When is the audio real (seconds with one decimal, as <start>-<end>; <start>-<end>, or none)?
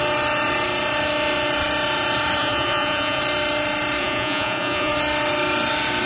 0.0-2.4; 3.2-4.0; 4.9-6.1